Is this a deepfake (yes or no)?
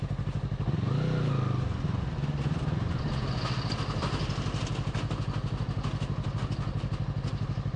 no